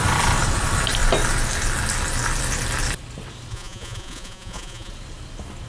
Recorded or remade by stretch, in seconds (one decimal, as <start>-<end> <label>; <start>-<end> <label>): 0.0-3.5 recorded; 3.5-4.9 remade; 4.9-5.7 recorded